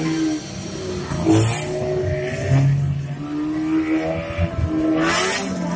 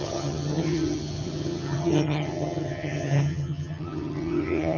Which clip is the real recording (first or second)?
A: first